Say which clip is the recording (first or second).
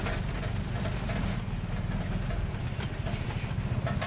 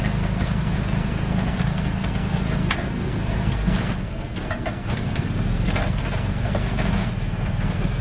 first